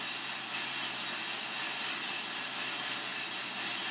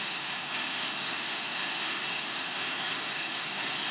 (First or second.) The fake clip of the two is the second